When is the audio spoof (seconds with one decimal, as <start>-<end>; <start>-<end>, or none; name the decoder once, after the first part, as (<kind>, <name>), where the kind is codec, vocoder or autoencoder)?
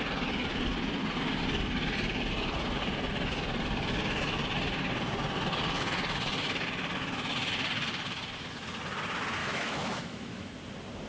9.4-10.5 (autoencoder, DAC-VAE)